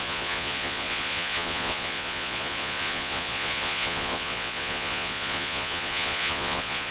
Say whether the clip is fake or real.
fake